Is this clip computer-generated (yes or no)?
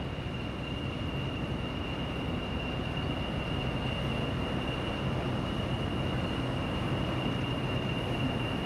no